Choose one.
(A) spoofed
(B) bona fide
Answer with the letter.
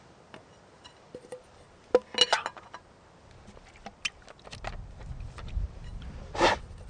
B